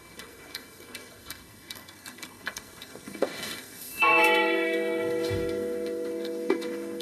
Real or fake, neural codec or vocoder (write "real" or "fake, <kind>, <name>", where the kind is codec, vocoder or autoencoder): fake, codec, SNAC